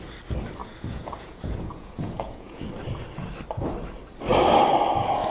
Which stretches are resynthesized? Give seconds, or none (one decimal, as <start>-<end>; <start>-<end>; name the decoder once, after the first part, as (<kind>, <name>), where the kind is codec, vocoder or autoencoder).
0.6-2.6 (vocoder, Vocos)